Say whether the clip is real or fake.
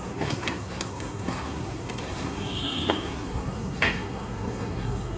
fake